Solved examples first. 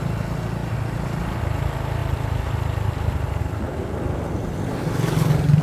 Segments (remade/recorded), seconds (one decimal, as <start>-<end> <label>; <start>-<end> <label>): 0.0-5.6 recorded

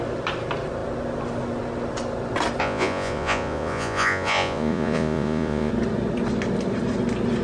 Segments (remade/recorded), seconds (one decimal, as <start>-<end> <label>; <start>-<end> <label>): 0.0-2.6 recorded; 2.6-5.7 remade; 5.7-7.4 recorded

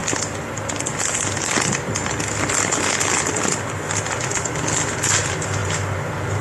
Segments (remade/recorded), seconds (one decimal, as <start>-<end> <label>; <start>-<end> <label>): 0.0-6.4 recorded